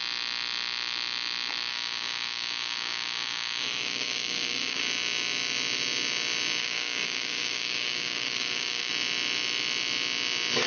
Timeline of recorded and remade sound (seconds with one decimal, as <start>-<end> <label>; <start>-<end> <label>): 0.0-1.7 recorded; 1.7-4.8 remade; 4.8-6.6 recorded; 6.6-8.9 remade; 8.9-10.7 recorded